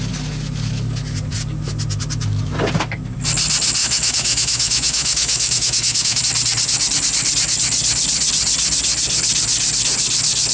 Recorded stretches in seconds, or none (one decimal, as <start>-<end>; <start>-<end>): 0.0-3.8; 6.2-10.5